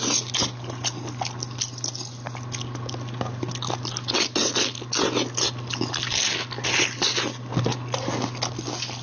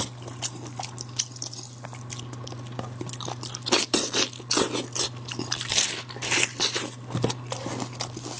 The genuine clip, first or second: first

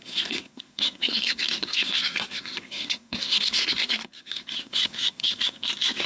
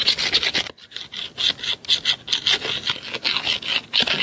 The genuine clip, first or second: second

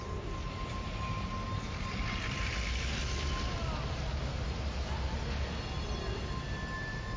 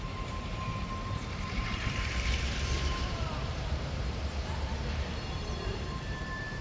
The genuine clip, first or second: first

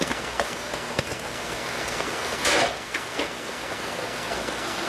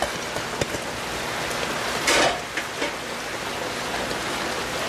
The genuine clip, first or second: second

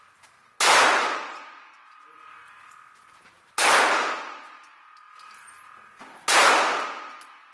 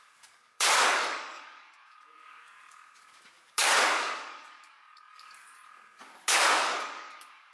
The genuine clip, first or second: first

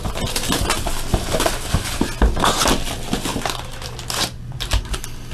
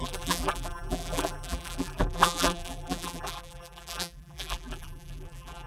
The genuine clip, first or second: first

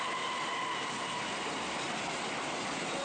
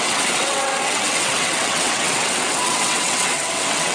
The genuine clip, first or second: first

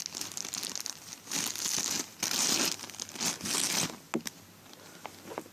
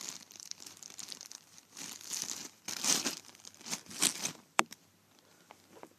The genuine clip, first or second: first